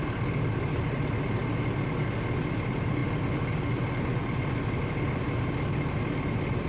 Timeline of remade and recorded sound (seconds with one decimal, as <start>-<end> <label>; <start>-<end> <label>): 0.0-6.7 recorded